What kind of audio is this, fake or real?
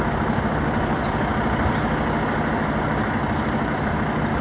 real